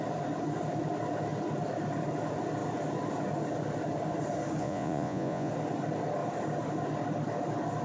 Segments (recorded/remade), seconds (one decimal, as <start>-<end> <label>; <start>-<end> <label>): 0.0-4.6 recorded; 4.6-5.5 remade; 5.5-7.8 recorded